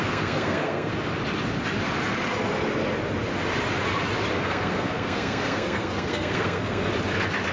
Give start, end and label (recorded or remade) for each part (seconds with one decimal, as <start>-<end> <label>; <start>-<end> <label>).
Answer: 0.0-0.9 remade; 0.9-4.3 recorded; 4.3-6.9 remade; 6.9-7.5 recorded